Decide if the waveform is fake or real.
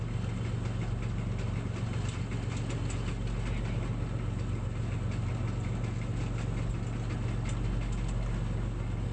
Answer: real